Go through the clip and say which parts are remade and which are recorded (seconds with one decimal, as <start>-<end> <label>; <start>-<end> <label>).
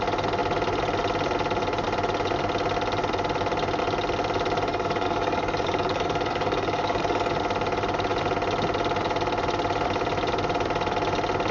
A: 0.0-4.7 recorded; 4.7-7.3 remade; 7.3-11.5 recorded